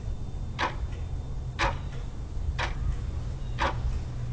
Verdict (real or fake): real